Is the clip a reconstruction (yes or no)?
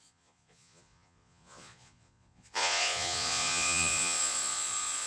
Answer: yes